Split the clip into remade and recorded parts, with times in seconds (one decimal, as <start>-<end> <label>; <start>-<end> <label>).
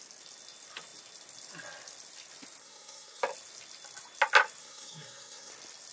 0.0-2.6 recorded; 2.6-3.2 remade; 3.2-4.6 recorded; 4.6-5.5 remade; 5.5-5.9 recorded